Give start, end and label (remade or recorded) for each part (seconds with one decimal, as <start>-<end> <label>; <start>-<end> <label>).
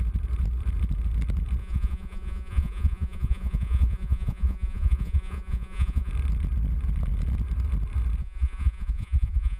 0.0-1.6 recorded; 1.6-6.1 remade; 6.1-8.2 recorded; 8.2-9.6 remade